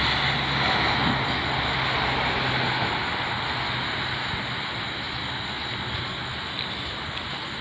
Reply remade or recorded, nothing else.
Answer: recorded